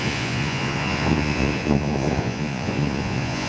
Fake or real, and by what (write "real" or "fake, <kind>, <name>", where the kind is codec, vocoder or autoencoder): fake, vocoder, Vocos